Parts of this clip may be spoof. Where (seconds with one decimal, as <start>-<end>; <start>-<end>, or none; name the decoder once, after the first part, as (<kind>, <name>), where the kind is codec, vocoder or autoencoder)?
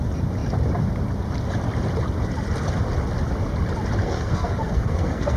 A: 4.0-5.4 (codec, SNAC)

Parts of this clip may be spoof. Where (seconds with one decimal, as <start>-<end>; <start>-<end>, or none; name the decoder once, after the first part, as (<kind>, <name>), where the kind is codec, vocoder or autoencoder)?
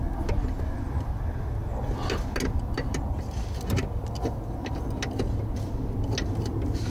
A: none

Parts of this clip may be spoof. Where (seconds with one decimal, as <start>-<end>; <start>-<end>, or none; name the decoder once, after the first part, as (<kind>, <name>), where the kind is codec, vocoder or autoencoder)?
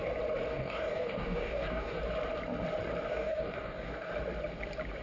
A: 0.5-2.0 (codec, DAC); 3.1-4.1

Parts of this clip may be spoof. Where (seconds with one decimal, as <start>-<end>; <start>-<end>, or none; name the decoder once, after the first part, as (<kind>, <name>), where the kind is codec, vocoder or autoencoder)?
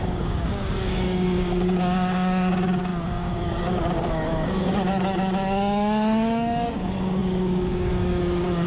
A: 0.0-8.7 (codec, DAC)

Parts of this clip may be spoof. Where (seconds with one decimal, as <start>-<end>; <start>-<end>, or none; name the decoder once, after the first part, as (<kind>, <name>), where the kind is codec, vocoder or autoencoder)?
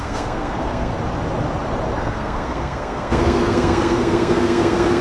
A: 0.0-0.9 (codec, SNAC); 2.0-5.0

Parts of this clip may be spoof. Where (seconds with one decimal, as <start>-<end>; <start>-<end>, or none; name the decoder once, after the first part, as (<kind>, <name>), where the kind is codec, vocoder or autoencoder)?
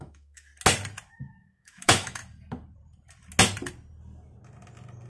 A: 0.0-0.5 (autoencoder, DAC-VAE); 1.1-2.2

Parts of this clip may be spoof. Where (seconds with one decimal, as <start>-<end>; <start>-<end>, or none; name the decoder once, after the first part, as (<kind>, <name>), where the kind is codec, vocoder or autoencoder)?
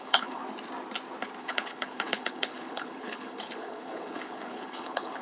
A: 0.0-0.4 (codec, HILCodec); 1.4-5.2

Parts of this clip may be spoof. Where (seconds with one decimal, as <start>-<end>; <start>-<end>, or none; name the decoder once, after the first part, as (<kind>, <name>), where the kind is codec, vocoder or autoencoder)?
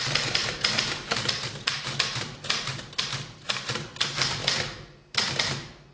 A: 0.0-4.4 (vocoder, BigVGAN v2); 5.3-5.9